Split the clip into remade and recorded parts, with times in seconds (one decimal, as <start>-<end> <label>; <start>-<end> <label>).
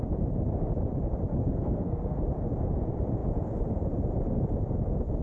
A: 0.0-1.4 recorded; 1.4-2.2 remade; 2.2-5.2 recorded